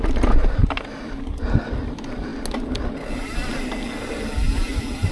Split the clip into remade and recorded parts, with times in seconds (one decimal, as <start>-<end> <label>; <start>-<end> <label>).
0.0-5.1 recorded